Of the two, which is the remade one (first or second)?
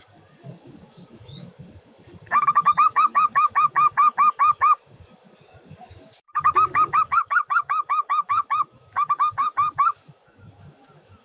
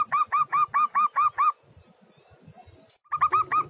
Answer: first